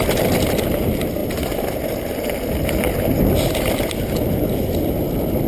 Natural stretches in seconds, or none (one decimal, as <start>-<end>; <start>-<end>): 0.0-5.5